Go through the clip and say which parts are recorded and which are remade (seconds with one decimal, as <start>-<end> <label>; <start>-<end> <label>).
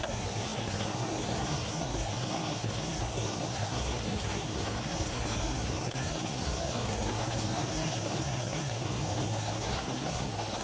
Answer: 0.0-10.6 remade